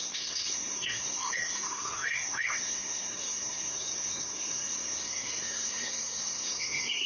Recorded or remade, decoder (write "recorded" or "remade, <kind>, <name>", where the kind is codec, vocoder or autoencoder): remade, codec, SNAC